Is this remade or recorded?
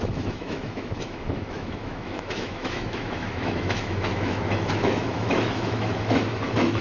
remade